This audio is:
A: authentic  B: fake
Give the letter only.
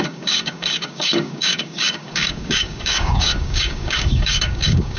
B